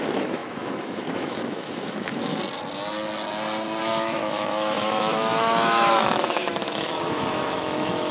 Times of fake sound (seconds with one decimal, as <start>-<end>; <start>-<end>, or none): 0.0-2.4; 3.8-8.1